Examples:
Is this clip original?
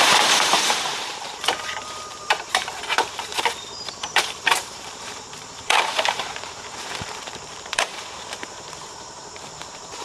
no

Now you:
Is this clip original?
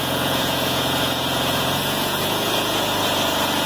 no